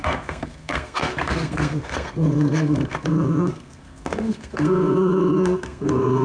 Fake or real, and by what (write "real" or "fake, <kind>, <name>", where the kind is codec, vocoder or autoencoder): fake, codec, SNAC